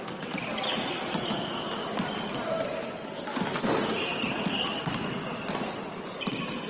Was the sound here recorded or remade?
recorded